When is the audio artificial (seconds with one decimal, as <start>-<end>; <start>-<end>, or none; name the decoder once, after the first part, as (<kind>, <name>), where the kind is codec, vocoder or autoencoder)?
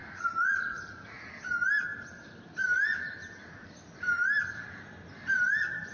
0.0-1.3 (vocoder, Vocos)